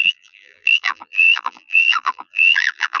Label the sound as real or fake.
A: fake